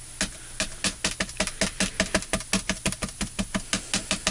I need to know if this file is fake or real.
real